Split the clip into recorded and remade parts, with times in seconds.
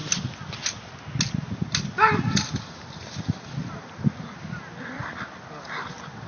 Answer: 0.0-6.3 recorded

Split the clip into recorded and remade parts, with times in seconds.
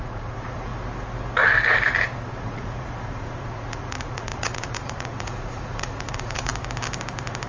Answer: 0.0-0.7 remade; 0.7-2.4 recorded; 2.4-6.5 remade; 6.5-7.5 recorded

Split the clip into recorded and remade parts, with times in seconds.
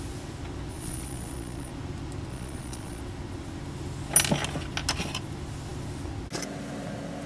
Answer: 0.0-0.7 recorded; 0.7-1.7 remade; 1.7-2.3 recorded; 2.3-3.0 remade; 3.0-7.3 recorded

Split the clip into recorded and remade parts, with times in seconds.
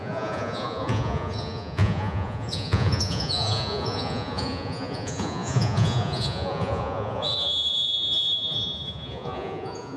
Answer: 0.0-10.0 remade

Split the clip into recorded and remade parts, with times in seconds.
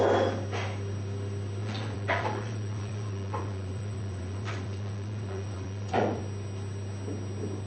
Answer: 0.0-1.6 recorded; 1.6-6.2 remade; 6.2-7.7 recorded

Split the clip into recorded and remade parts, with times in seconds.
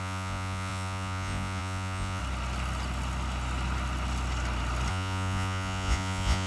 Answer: 0.0-2.2 remade; 2.2-4.9 recorded; 4.9-6.5 remade